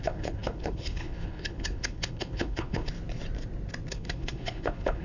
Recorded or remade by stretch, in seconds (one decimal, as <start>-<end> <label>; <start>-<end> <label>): 0.0-2.9 remade; 2.9-3.9 recorded; 3.9-5.0 remade